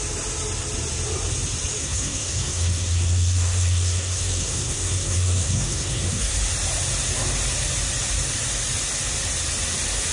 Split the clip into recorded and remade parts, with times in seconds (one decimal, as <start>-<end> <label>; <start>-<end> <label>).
0.0-1.8 recorded; 1.8-6.3 remade; 6.3-10.1 recorded